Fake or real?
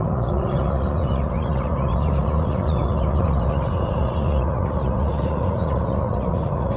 fake